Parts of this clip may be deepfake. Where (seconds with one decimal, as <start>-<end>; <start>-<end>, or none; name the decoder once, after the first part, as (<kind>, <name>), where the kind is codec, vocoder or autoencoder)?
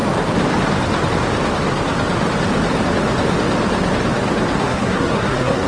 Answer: 4.6-5.7 (codec, SNAC)